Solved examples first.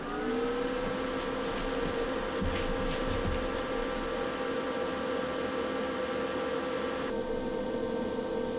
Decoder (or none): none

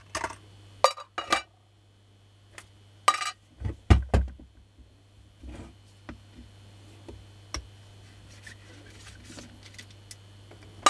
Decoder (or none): none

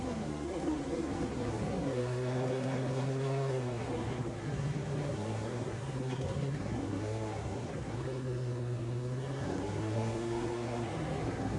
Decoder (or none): codec, SNAC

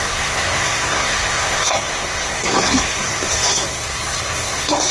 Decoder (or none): codec, SNAC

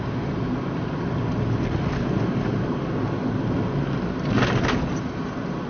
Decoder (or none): none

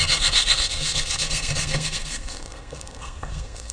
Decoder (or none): codec, SNAC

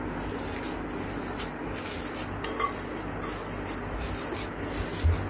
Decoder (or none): none